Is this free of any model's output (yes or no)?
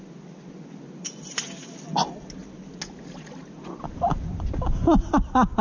yes